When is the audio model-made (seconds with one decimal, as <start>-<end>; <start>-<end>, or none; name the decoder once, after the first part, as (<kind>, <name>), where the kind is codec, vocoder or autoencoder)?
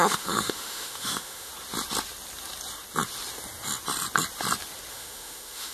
0.0-1.5 (autoencoder, DAC-VAE); 4.9-5.7